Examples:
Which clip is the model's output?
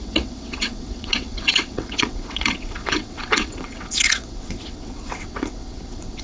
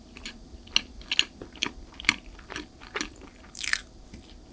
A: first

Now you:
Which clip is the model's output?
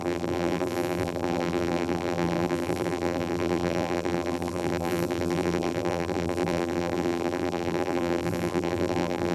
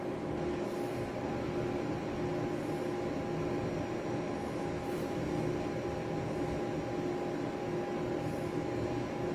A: first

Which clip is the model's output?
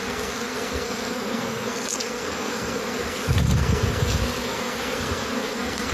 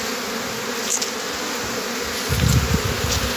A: first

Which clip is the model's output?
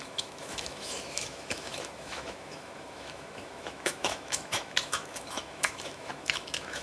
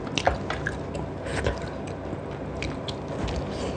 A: first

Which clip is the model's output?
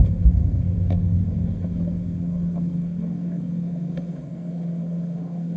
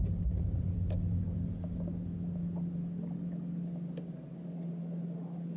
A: first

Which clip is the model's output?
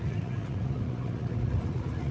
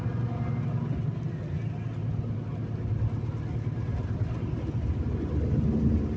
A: first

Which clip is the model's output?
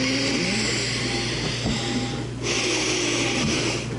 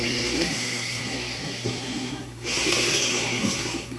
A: second